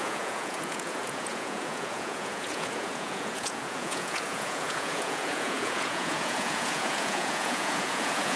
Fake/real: fake